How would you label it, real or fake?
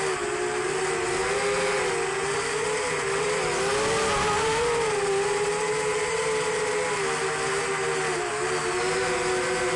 real